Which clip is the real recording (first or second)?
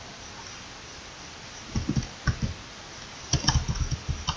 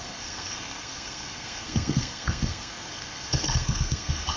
first